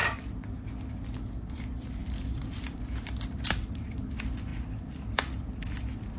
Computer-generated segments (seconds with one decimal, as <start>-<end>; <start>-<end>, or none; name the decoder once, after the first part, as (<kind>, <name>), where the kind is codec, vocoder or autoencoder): 2.0-2.8 (vocoder, BigVGAN v2)